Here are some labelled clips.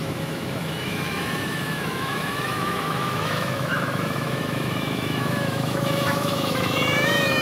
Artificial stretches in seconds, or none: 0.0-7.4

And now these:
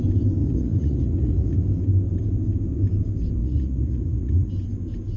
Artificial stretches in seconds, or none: 0.4-1.7; 3.4-4.5

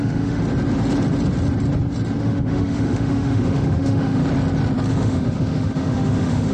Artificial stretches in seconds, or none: 0.0-0.4; 2.2-4.2; 4.9-6.5

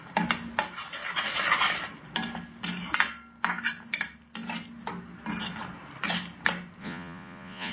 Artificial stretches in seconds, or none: 6.8-7.7

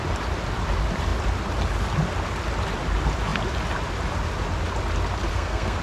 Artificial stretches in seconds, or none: 5.3-5.8

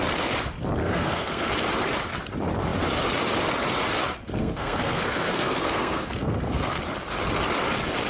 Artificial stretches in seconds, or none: 0.8-1.5; 4.4-6.8

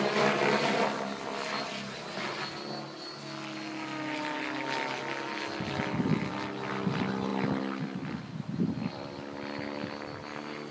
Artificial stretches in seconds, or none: none